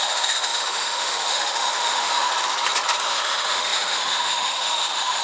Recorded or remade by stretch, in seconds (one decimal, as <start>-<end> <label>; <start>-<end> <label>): 0.0-2.3 remade; 2.3-3.0 recorded; 3.0-5.2 remade